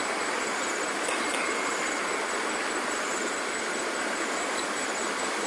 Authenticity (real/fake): real